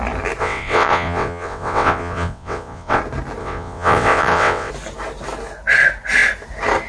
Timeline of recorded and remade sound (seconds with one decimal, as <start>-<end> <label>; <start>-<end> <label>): 0.0-0.4 recorded; 0.4-3.0 remade; 3.0-3.4 recorded; 3.4-4.7 remade; 4.7-6.9 recorded

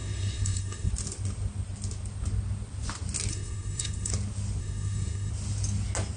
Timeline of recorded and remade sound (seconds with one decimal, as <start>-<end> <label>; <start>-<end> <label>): 0.0-0.9 remade; 0.9-3.3 recorded; 3.3-4.1 remade; 4.1-4.6 recorded; 4.6-5.3 remade; 5.3-6.2 recorded